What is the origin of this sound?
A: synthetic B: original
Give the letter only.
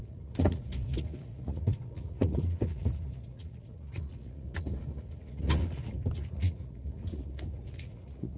A